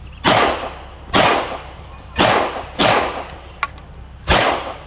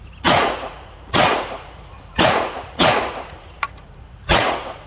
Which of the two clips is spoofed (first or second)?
second